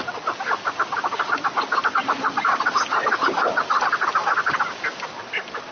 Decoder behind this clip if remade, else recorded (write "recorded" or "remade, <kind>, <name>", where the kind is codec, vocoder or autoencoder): recorded